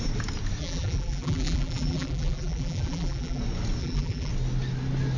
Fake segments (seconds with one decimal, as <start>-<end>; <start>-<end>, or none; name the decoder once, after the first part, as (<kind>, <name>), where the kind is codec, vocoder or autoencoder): 0.6-3.4 (vocoder, BigVGAN v2); 3.8-4.3